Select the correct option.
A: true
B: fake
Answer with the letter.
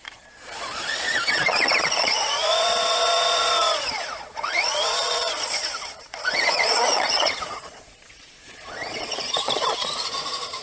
B